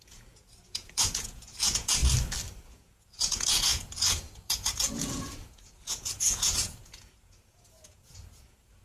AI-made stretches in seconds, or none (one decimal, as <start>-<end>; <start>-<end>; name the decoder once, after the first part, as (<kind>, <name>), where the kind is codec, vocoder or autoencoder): 0.0-2.0 (vocoder, Vocos); 2.7-8.8